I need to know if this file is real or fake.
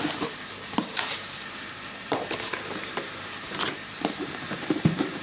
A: fake